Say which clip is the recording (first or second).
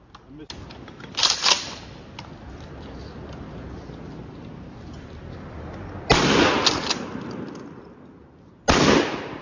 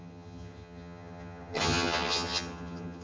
first